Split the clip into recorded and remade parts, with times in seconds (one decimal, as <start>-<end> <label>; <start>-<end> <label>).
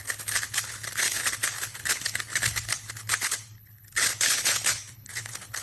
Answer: 0.0-5.6 remade